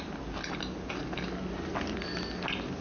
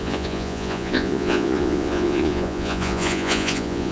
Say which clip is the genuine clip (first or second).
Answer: first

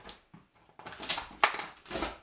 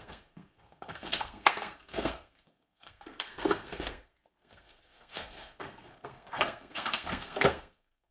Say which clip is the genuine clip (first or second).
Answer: first